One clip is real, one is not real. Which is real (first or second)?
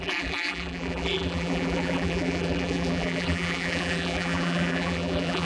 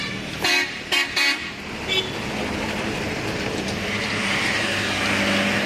second